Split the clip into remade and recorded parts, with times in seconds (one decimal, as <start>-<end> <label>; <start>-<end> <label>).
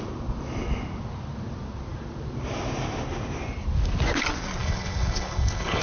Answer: 0.0-4.6 recorded; 4.6-5.8 remade